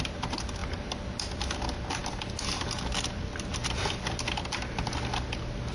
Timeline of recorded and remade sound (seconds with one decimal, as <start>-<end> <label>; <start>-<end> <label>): 0.0-5.7 recorded